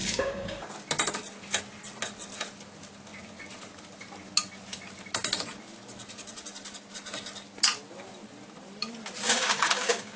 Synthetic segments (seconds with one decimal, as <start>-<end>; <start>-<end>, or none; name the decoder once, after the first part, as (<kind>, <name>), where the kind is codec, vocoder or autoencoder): 0.0-0.7 (codec, DAC); 9.2-10.2